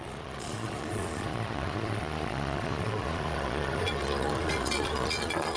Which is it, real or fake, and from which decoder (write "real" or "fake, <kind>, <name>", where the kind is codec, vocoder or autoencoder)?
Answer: fake, vocoder, Vocos